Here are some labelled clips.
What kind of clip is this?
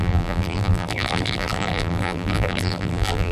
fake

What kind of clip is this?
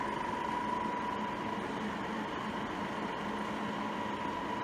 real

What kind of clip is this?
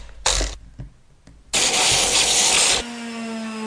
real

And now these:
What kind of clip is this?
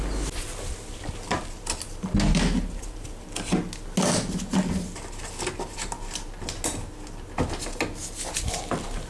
real